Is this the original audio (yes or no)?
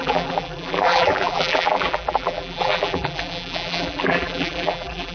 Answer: no